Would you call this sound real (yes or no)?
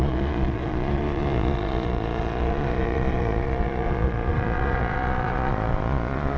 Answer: no